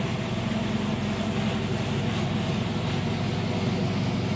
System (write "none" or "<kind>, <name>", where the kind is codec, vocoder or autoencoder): none